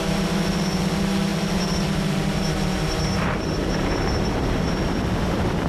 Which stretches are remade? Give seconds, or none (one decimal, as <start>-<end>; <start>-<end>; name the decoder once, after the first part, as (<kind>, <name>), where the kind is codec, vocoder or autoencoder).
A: 0.0-5.7 (vocoder, BigVGAN v2)